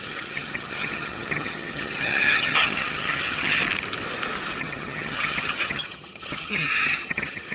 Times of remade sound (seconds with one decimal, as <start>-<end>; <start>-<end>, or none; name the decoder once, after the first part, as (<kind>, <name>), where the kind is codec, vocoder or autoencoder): 0.0-3.6 (vocoder, HiFi-GAN); 4.6-7.5